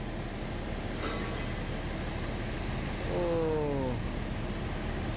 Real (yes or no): yes